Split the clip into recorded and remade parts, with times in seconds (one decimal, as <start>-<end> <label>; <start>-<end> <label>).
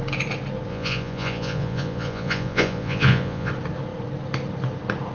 0.0-0.7 recorded; 0.7-3.5 remade; 3.5-5.1 recorded